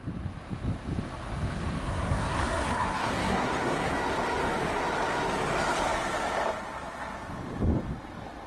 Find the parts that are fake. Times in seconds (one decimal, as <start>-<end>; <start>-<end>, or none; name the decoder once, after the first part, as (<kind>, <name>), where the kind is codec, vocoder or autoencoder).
1.8-3.9 (codec, SNAC)